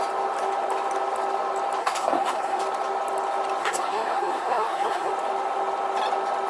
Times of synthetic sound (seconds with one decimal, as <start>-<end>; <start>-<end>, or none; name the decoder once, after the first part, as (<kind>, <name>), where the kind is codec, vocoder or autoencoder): 1.8-2.6 (codec, SNAC); 3.6-5.1